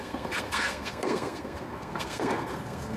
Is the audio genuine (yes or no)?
no